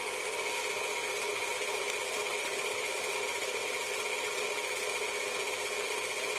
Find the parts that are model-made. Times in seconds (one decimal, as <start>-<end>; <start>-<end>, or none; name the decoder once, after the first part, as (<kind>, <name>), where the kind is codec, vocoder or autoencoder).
1.5-4.0 (vocoder, BigVGAN v2)